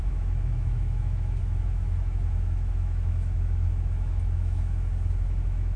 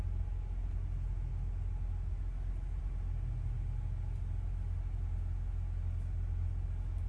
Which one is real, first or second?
second